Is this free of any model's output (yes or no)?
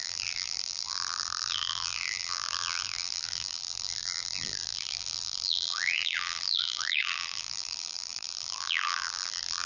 no